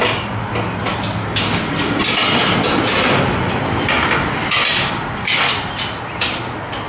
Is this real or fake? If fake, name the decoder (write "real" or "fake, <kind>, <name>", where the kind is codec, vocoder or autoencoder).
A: real